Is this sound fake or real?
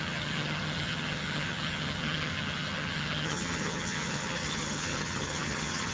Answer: fake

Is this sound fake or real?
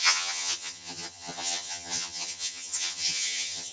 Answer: fake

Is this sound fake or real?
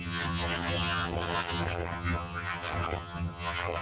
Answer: fake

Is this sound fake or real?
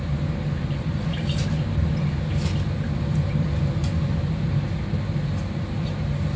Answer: real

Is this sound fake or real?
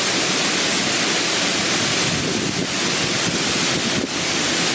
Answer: real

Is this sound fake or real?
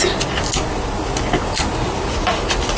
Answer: real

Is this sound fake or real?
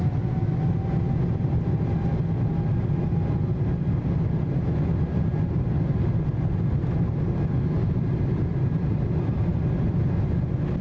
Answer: real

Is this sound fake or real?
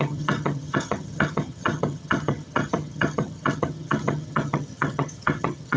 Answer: fake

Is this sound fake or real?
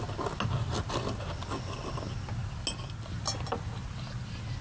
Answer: real